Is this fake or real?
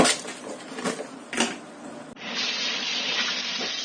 real